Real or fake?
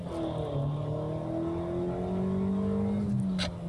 real